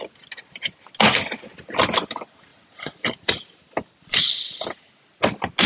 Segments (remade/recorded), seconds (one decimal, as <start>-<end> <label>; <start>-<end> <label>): 0.0-2.5 recorded; 2.5-4.2 remade; 4.2-5.7 recorded